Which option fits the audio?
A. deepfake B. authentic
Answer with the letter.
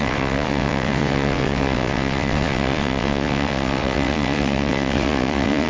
A